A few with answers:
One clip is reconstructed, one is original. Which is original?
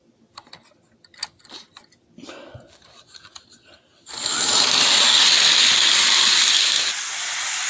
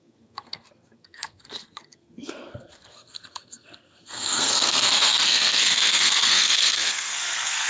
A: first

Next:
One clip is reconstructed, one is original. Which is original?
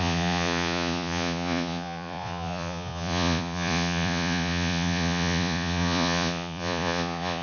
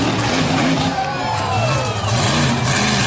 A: second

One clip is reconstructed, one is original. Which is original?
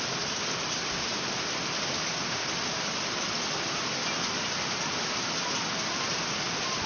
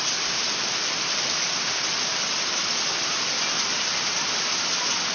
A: first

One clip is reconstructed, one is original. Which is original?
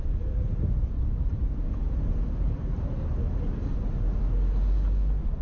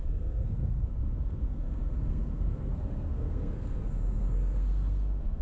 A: first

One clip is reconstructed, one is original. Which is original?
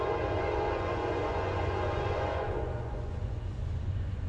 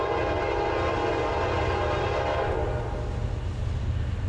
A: second